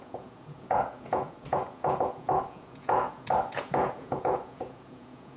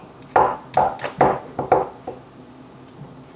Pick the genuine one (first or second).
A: second